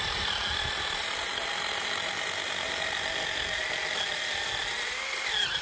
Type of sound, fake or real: real